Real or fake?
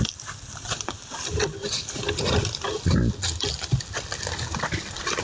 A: real